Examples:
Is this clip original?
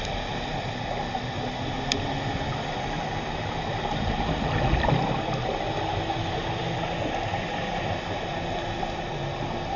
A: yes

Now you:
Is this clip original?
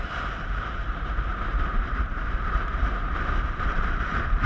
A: no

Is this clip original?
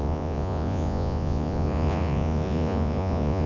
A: no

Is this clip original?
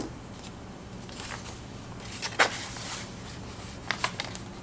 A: yes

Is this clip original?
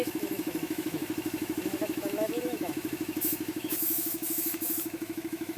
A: no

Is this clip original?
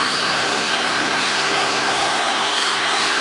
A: no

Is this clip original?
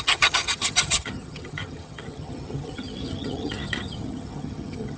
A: no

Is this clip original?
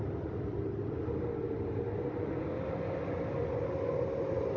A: yes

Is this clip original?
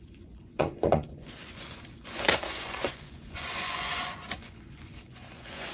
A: no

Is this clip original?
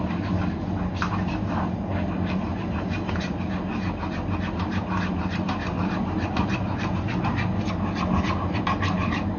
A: no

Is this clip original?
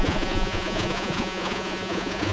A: no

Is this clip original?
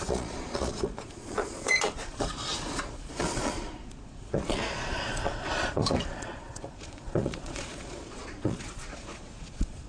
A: no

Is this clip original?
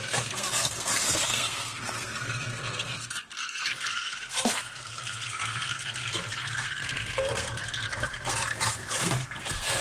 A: no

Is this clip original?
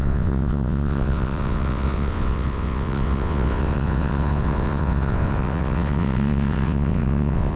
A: no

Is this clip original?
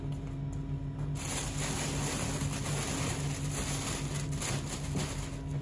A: yes